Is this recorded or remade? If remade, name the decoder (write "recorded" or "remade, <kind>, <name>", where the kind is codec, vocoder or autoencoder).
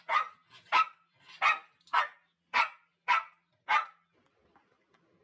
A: recorded